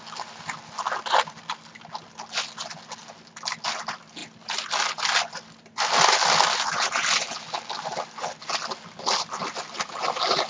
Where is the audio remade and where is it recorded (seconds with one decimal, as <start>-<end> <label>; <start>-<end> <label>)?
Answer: 0.0-10.5 recorded